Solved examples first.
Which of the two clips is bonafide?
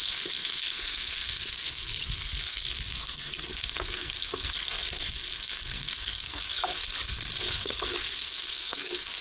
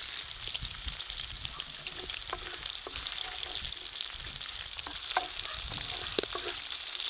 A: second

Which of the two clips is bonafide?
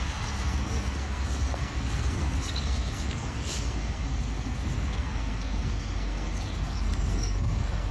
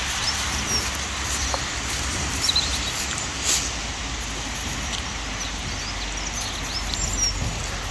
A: second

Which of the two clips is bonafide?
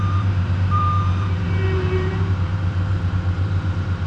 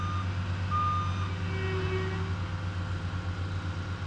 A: second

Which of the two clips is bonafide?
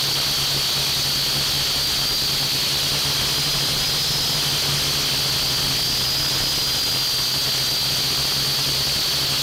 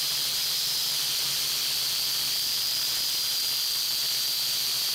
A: first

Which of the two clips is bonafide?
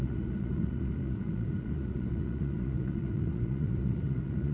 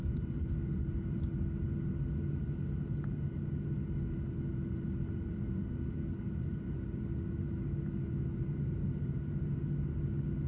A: second